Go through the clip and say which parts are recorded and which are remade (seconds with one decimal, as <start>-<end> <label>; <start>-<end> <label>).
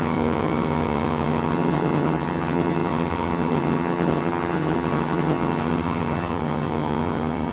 0.0-7.5 remade